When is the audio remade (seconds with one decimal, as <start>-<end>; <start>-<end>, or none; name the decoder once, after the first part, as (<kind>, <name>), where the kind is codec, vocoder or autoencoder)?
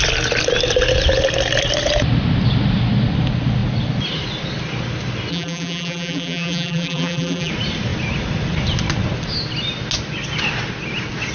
5.3-7.5 (vocoder, BigVGAN v2)